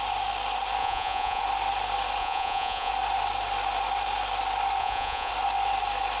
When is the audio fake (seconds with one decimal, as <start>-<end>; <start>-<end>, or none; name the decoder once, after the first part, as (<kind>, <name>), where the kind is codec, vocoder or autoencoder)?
0.8-1.4 (vocoder, Vocos); 2.2-2.9; 4.8-5.3